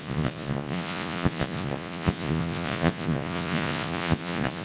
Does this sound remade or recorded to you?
remade